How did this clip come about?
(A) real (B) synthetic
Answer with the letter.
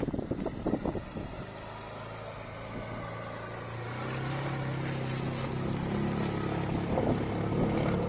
A